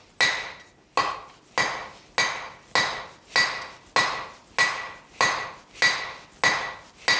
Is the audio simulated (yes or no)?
no